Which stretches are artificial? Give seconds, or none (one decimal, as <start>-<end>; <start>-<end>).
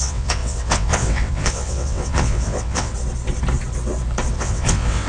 0.0-2.9; 4.3-5.1